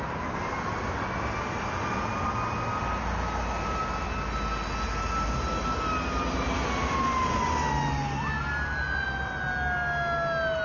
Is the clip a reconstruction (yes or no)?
no